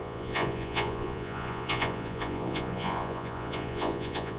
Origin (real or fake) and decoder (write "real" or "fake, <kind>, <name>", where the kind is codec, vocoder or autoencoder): fake, vocoder, Vocos